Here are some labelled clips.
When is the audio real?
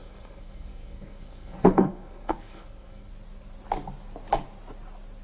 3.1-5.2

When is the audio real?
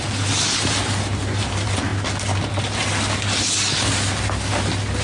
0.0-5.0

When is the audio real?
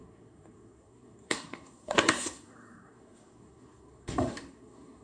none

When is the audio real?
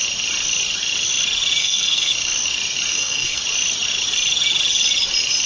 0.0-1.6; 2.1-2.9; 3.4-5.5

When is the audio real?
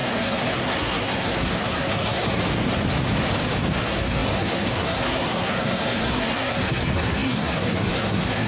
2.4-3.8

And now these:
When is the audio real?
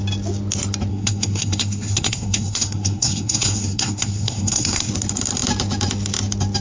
0.0-0.9; 4.9-6.6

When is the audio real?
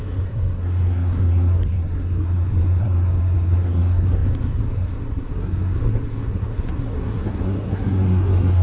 none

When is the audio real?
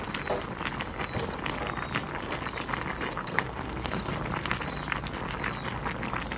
0.0-3.2; 4.1-6.4